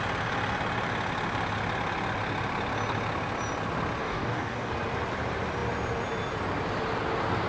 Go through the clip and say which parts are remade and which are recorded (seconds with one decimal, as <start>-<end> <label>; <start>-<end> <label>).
0.0-4.0 recorded; 4.0-4.7 remade; 4.7-7.5 recorded